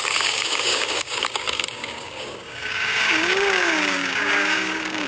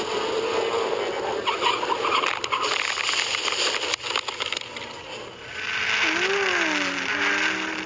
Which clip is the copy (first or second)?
first